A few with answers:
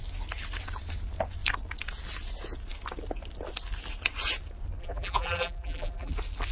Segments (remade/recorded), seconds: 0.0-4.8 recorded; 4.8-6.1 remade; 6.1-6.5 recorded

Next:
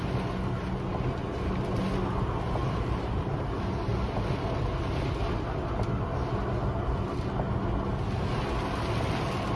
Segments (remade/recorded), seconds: 0.0-2.6 recorded; 2.6-3.3 remade; 3.3-9.6 recorded